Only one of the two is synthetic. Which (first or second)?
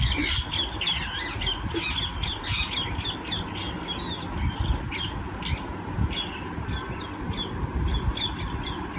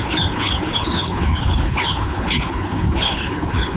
second